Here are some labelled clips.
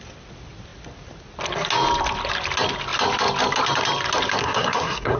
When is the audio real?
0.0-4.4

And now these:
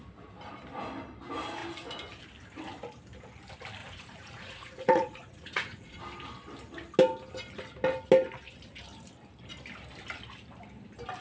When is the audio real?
0.0-3.8; 6.0-11.2

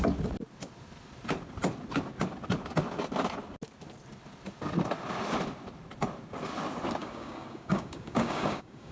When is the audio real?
0.0-7.0